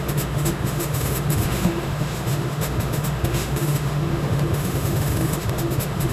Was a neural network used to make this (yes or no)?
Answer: yes